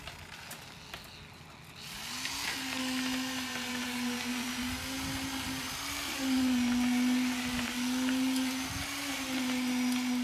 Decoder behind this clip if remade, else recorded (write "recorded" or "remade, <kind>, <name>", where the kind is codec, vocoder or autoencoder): recorded